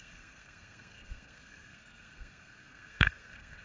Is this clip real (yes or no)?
no